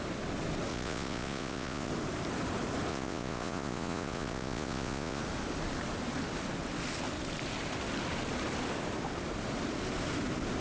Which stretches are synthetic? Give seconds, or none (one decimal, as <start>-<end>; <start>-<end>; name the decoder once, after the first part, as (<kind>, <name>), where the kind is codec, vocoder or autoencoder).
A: 0.7-1.9 (vocoder, Vocos); 2.9-5.2